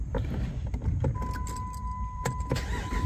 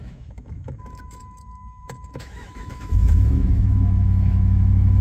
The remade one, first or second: second